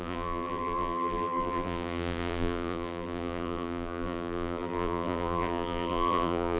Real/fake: fake